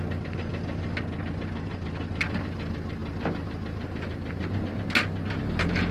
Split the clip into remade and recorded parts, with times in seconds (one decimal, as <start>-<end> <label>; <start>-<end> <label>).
0.0-5.9 recorded